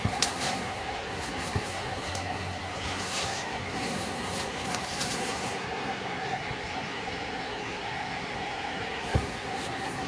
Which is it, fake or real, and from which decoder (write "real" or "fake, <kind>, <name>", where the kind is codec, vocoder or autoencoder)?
fake, codec, SNAC